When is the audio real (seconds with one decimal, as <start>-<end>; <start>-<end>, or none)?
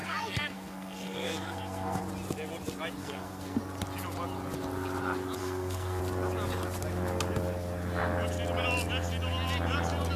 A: 2.0-3.0; 3.6-5.4; 6.0-10.2